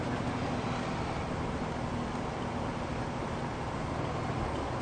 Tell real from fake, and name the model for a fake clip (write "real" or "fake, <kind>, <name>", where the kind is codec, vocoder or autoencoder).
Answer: real